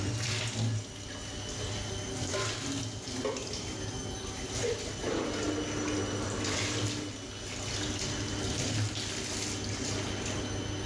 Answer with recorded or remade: recorded